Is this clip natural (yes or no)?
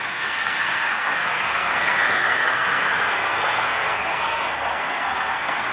no